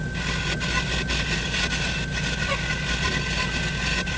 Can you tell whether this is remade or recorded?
recorded